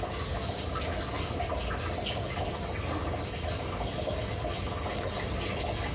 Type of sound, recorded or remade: recorded